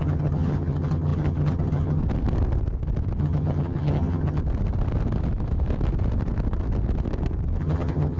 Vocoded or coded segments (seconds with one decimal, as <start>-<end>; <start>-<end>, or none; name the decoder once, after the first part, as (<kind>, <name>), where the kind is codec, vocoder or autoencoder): 0.0-2.0 (vocoder, HiFi-GAN); 3.2-4.4; 7.6-8.2